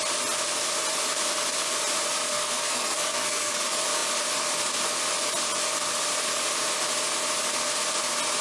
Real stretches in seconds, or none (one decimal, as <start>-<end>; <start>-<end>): 0.0-2.3; 3.6-8.4